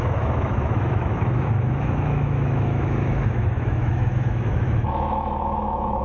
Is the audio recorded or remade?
remade